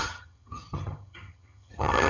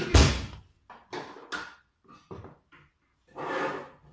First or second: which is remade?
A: first